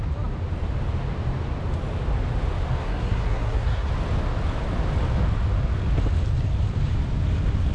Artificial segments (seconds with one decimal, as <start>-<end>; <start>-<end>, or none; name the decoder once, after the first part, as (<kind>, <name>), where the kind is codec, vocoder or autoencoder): 2.8-3.9 (codec, SNAC)